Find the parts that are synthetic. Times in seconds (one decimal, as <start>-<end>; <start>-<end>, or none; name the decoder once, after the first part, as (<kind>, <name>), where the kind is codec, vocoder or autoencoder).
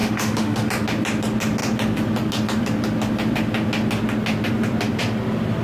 0.0-0.7 (autoencoder, DAC-VAE)